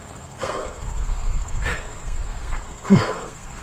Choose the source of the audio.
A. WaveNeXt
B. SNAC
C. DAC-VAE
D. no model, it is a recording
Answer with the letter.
B